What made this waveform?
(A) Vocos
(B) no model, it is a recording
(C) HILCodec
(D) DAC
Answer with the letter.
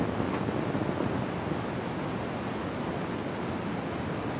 B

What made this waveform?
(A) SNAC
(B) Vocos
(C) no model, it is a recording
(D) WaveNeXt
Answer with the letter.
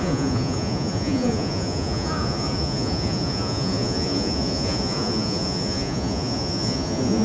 B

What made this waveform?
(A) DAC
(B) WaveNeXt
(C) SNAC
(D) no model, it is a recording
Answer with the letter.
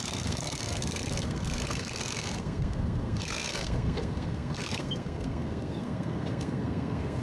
C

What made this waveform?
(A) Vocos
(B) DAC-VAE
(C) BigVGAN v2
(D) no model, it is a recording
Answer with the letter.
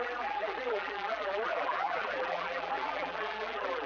C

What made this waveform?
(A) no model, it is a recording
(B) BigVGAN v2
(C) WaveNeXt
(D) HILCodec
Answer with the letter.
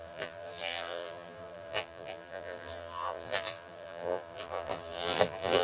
B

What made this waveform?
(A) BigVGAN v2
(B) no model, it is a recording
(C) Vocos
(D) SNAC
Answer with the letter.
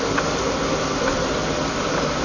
B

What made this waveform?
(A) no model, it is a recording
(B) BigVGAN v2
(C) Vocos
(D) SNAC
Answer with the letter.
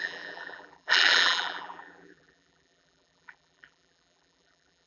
B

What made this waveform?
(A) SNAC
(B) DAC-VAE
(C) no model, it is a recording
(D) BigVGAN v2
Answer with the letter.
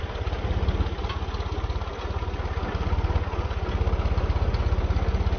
C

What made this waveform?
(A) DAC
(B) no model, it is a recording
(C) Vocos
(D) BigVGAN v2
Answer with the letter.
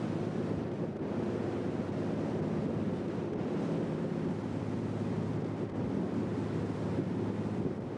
D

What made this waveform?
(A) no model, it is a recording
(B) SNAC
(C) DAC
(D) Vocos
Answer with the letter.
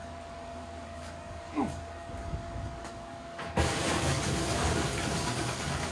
C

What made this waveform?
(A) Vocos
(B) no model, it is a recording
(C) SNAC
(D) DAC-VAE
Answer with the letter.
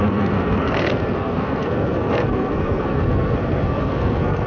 C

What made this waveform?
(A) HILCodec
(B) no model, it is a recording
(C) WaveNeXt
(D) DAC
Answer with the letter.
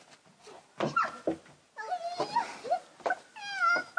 B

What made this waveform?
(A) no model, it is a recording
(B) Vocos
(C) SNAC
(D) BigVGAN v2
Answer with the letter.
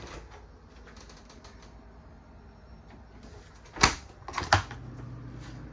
A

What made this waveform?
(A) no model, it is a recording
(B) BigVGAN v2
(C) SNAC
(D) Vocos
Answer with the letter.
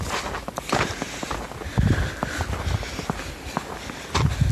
A